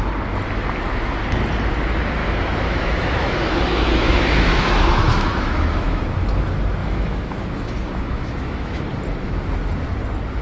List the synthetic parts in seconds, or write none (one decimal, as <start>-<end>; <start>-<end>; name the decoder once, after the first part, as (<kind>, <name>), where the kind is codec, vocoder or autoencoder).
2.2-6.0 (autoencoder, DAC-VAE); 6.8-8.8